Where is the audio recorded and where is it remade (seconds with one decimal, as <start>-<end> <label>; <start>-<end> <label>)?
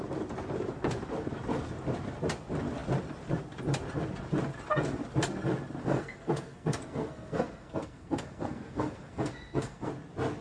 0.0-5.8 recorded; 5.8-9.9 remade; 9.9-10.4 recorded